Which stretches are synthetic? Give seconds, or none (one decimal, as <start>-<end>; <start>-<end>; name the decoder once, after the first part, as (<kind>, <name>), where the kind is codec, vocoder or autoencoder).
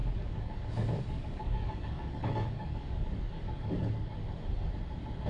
0.0-4.2 (codec, DAC)